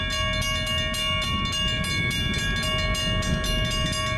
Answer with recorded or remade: recorded